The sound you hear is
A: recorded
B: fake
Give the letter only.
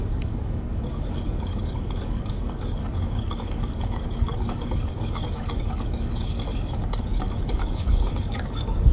B